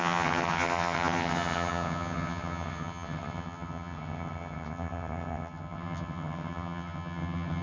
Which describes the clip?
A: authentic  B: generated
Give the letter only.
B